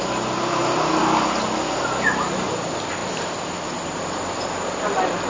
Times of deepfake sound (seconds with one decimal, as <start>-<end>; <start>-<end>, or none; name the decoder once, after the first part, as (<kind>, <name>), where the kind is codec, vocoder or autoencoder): 3.0-4.0 (vocoder, BigVGAN v2)